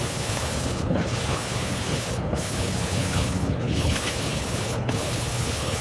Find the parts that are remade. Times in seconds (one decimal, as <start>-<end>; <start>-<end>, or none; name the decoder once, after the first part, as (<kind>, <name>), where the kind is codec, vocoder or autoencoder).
0.0-5.8 (codec, HILCodec)